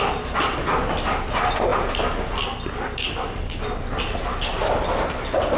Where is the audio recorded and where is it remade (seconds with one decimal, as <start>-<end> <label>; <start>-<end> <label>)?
0.0-5.6 recorded